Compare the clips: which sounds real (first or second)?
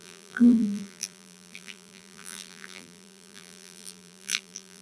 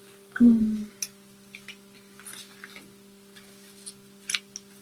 second